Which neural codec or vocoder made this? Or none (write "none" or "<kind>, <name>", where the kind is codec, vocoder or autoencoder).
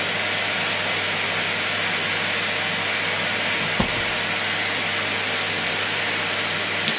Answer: none